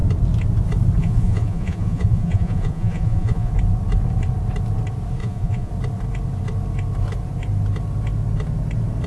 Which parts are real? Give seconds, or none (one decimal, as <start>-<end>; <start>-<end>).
0.0-1.0; 3.5-5.2; 5.7-9.1